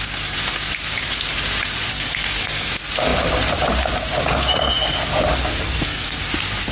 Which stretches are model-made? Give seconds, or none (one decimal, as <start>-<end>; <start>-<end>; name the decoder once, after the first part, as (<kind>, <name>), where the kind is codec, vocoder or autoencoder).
1.9-2.7 (codec, SNAC); 5.5-6.2